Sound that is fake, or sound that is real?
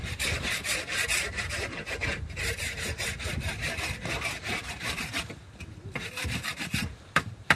fake